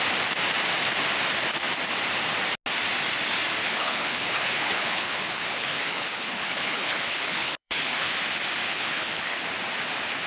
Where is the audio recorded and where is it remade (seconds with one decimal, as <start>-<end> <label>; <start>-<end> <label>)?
0.0-3.6 recorded; 3.6-8.1 remade; 8.1-8.7 recorded; 8.7-9.4 remade; 9.4-10.3 recorded